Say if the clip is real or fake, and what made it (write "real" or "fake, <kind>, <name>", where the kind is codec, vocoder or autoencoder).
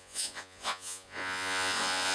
fake, vocoder, Vocos